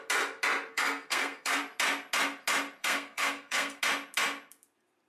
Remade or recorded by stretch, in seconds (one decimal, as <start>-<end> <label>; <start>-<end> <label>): 0.0-0.7 recorded; 0.7-1.6 remade; 1.6-2.8 recorded; 2.8-3.8 remade; 3.8-5.1 recorded